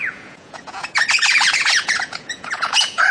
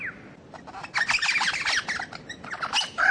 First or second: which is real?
second